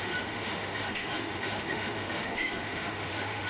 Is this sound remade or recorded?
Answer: remade